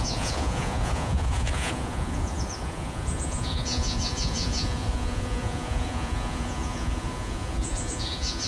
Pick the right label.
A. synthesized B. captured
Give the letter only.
A